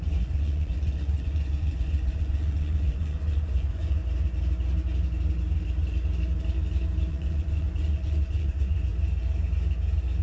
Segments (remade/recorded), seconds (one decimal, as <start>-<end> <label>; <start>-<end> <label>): 0.0-4.0 remade; 4.0-7.1 recorded; 7.1-8.9 remade; 8.9-10.2 recorded